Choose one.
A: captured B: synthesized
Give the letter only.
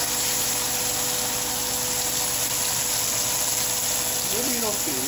A